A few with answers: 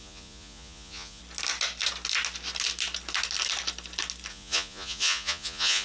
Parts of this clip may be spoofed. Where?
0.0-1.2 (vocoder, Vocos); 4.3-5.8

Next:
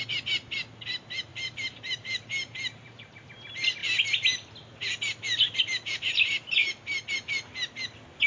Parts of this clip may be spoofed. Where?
1.3-3.3 (vocoder, BigVGAN v2)

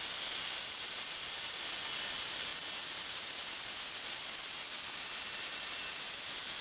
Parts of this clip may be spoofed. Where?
0.6-1.6 (vocoder, BigVGAN v2); 2.5-6.6